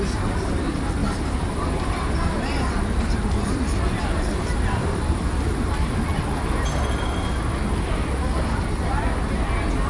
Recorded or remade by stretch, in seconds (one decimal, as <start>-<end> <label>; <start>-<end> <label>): 0.0-6.1 remade; 6.1-9.9 recorded